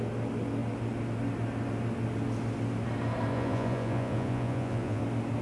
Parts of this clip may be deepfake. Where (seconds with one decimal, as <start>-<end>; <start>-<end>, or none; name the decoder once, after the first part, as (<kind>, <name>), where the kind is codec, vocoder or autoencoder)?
3.3-5.0 (vocoder, Vocos)